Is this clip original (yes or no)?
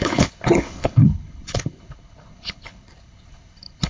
no